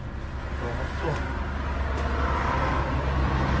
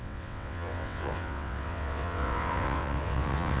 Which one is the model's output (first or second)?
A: second